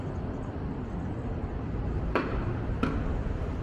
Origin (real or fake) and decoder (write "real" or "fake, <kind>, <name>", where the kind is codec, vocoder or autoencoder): real